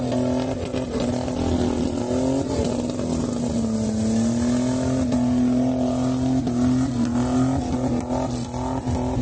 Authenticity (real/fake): real